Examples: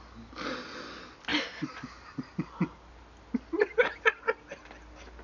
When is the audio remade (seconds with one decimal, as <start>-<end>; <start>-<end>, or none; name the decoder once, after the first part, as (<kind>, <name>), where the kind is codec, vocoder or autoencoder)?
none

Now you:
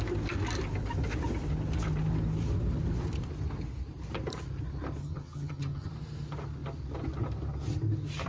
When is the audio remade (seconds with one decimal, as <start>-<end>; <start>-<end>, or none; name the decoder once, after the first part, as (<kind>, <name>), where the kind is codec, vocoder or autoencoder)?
5.0-5.9 (vocoder, HiFi-GAN)

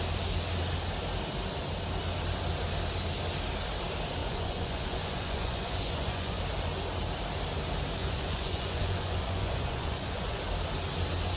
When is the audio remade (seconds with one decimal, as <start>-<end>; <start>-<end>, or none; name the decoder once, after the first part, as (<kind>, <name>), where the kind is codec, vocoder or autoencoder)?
4.2-6.4 (vocoder, Vocos); 8.0-10.4